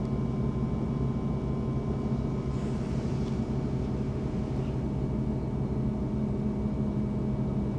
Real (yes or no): yes